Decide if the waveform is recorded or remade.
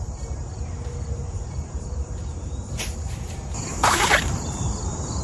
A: remade